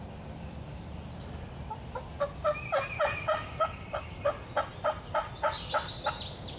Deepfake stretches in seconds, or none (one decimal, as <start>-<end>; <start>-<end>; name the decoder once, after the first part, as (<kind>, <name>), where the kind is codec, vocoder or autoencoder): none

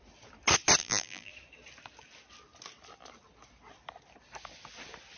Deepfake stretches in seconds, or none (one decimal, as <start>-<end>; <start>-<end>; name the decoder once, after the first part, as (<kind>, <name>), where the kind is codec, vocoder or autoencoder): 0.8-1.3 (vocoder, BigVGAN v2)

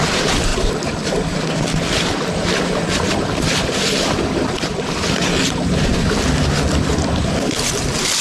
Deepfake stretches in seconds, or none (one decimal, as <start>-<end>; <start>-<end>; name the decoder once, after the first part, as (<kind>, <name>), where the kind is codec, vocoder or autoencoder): 0.0-5.9 (vocoder, BigVGAN v2); 6.9-8.2

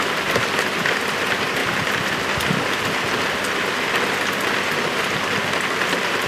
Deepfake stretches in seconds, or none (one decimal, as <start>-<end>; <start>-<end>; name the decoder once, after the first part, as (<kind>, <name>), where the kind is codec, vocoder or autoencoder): none